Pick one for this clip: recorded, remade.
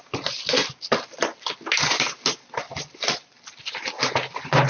recorded